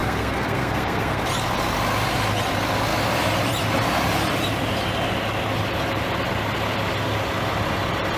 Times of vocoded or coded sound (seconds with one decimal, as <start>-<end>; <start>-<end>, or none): 0.0-1.2